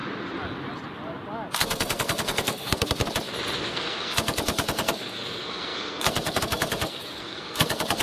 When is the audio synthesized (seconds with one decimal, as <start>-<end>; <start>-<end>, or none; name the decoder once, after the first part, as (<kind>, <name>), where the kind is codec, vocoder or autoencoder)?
1.5-3.0 (codec, SNAC); 3.7-8.0